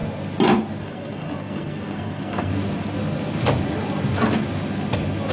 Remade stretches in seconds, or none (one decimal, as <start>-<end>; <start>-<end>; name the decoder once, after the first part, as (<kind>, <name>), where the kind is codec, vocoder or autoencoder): 0.8-2.5 (codec, SNAC)